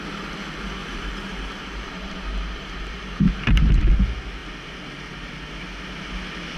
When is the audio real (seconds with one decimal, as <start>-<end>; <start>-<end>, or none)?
0.0-0.8; 3.9-6.6